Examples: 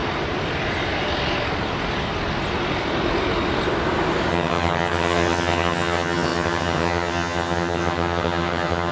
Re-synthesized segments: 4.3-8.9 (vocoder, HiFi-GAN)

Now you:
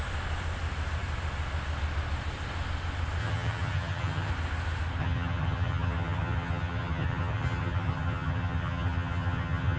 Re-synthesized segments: 3.2-4.3 (vocoder, HiFi-GAN); 5.0-9.8

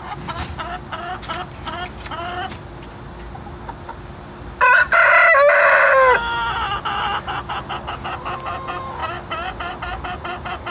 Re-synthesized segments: none

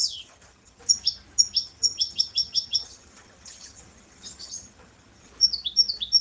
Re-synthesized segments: 0.0-0.8 (vocoder, HiFi-GAN); 1.6-5.3

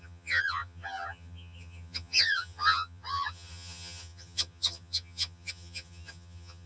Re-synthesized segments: 0.0-6.7 (vocoder, HiFi-GAN)

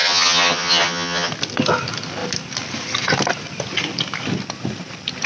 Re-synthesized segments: 0.0-1.3 (vocoder, HiFi-GAN)